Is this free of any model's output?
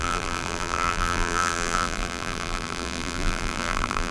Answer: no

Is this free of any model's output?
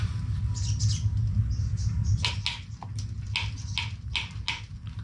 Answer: yes